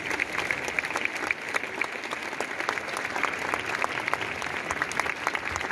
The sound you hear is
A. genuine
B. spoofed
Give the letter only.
A